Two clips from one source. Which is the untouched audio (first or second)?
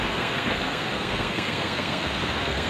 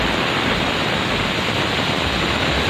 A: second